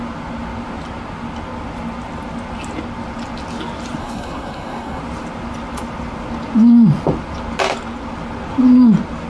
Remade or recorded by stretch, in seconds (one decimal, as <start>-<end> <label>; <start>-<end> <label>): 0.0-4.0 recorded; 4.0-5.0 remade; 5.0-9.3 recorded